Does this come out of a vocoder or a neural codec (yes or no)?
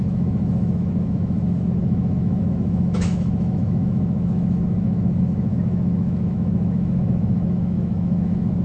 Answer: yes